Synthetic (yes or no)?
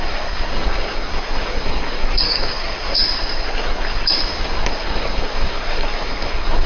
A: yes